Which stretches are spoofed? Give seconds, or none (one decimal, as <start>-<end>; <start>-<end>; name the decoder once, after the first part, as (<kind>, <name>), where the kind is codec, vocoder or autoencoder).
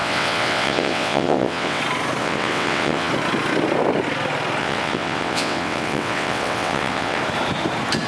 0.0-1.8 (vocoder, WaveNeXt); 2.2-3.1; 4.6-7.2